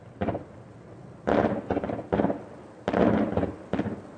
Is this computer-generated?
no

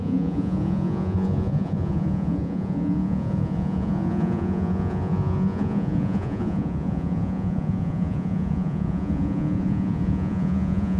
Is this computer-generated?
yes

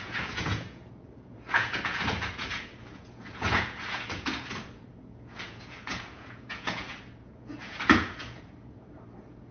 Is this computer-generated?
yes